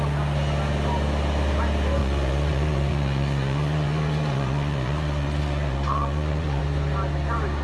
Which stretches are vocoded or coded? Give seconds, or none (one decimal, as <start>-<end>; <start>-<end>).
2.0-6.6